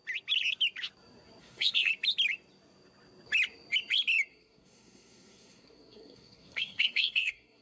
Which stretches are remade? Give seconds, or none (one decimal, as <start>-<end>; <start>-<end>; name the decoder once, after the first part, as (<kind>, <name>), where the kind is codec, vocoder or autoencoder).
1.4-1.9 (codec, SNAC); 4.3-7.6